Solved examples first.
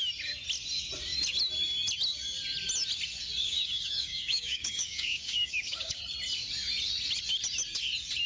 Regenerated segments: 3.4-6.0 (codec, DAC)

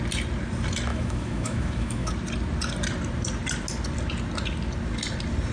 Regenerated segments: 0.9-2.1 (autoencoder, DAC-VAE)

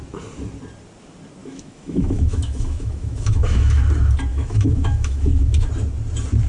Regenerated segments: 1.4-3.8 (autoencoder, DAC-VAE); 4.3-5.7

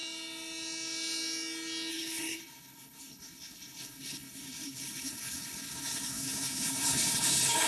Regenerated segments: 1.9-7.7 (codec, HILCodec)

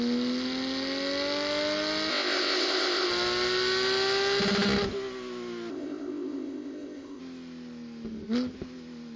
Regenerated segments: 2.1-3.1 (codec, ZipCodec); 5.7-7.2

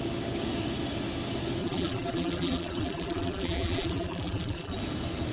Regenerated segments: 1.6-4.8 (vocoder, BigVGAN v2)